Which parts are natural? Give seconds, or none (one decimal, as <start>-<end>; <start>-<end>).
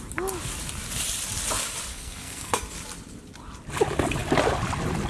0.0-1.9; 2.6-5.1